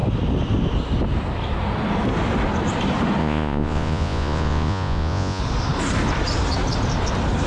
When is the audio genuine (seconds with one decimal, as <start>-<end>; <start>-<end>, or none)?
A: 0.0-3.2; 5.4-7.5